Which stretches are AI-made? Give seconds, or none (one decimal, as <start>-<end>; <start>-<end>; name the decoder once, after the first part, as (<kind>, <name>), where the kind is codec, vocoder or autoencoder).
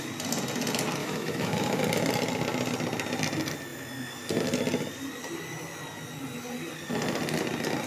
1.0-1.8 (autoencoder, DAC-VAE)